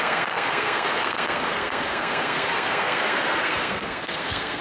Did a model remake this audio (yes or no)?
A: yes